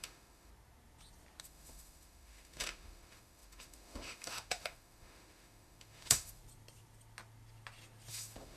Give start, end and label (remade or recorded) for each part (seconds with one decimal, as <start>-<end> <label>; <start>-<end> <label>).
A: 0.0-0.5 remade; 0.5-1.4 recorded; 1.4-6.4 remade; 6.4-8.1 recorded; 8.1-8.6 remade